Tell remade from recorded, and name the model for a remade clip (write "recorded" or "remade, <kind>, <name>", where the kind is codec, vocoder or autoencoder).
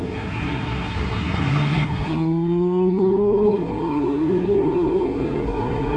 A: remade, codec, SNAC